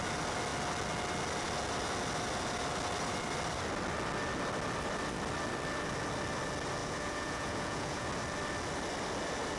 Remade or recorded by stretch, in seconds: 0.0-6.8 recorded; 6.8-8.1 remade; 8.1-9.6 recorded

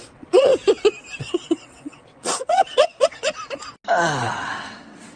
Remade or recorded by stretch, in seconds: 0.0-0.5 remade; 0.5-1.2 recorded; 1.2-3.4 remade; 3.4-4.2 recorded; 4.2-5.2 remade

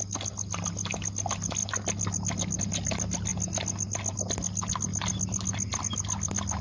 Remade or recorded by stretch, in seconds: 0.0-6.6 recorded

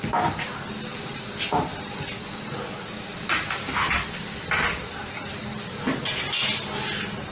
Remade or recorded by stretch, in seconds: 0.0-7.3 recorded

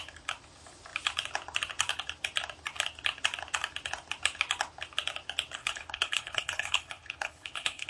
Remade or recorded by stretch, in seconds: 0.0-5.6 recorded; 5.6-7.9 remade

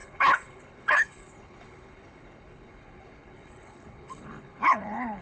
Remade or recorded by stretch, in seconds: 0.0-5.2 remade

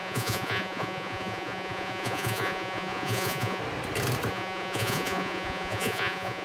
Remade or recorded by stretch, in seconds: 0.0-3.6 remade; 3.6-4.3 recorded; 4.3-6.4 remade